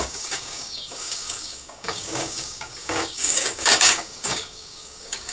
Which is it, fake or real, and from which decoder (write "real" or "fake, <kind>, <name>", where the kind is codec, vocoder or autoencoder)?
fake, codec, DAC